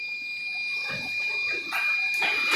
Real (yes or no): yes